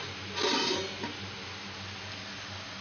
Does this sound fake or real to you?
real